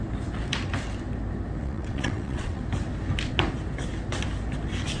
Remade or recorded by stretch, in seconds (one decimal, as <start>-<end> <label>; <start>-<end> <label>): 0.0-1.6 recorded; 1.6-2.6 remade; 2.6-5.0 recorded